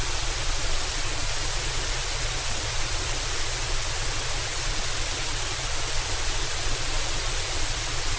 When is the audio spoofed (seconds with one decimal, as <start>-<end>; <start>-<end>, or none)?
0.0-8.2